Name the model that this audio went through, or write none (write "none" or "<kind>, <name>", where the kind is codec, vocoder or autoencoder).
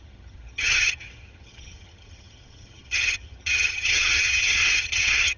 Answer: vocoder, HiFi-GAN